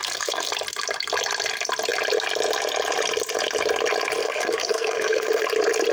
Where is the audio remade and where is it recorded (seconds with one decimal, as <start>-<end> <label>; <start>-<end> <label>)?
0.0-0.5 remade; 0.5-4.2 recorded; 4.2-5.4 remade; 5.4-5.9 recorded